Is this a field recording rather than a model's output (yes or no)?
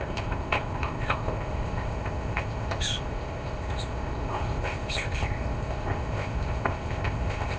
no